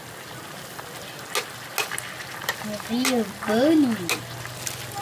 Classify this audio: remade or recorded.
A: recorded